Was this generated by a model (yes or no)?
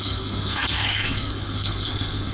yes